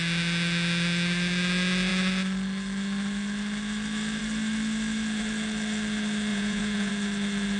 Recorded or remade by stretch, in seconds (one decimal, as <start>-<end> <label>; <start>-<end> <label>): 0.0-6.3 recorded; 6.3-6.9 remade; 6.9-7.6 recorded